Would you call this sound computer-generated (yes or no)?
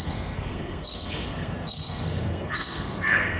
yes